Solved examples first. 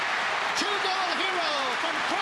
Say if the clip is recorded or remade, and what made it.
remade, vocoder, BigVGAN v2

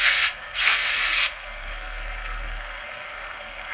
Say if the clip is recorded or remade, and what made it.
remade, codec, SNAC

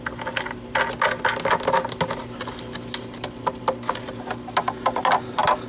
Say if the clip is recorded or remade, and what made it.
recorded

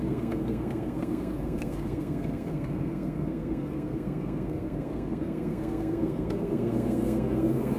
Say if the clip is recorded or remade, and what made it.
remade, codec, SNAC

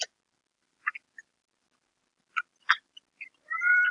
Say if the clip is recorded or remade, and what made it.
recorded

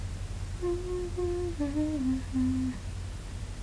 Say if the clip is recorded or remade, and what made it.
recorded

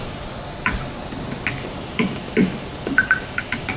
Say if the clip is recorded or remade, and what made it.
recorded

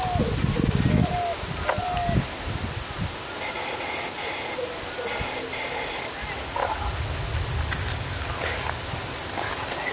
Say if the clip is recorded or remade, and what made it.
recorded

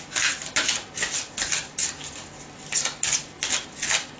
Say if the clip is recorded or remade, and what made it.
recorded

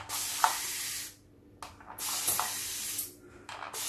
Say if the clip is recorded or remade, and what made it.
recorded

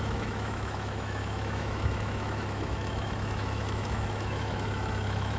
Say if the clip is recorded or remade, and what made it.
remade, autoencoder, DAC-VAE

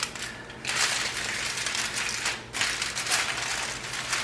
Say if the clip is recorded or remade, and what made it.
recorded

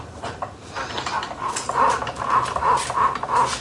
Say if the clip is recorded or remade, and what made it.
recorded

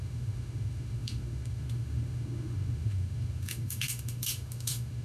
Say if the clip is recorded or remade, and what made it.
remade, autoencoder, DAC-VAE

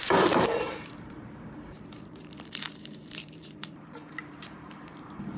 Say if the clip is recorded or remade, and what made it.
remade, vocoder, BigVGAN v2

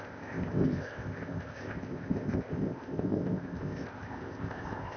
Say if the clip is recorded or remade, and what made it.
remade, codec, ZipCodec